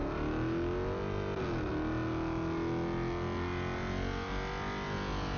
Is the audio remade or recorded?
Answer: recorded